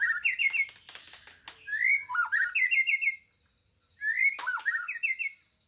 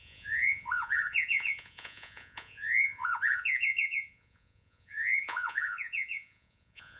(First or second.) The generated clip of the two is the second